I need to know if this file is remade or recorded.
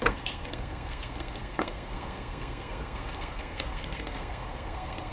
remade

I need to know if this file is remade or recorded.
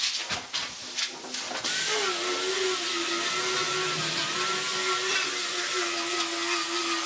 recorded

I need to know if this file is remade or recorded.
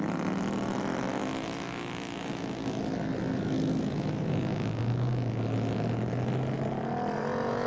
recorded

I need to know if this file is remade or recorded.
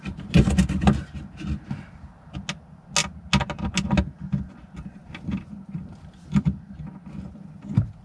recorded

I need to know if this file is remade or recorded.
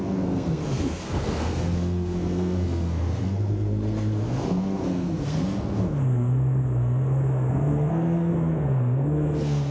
remade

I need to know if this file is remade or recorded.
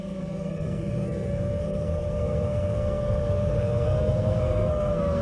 remade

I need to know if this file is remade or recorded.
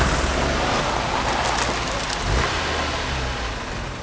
recorded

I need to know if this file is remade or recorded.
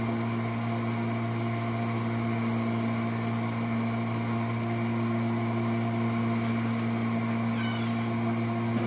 recorded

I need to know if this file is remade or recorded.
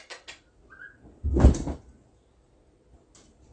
recorded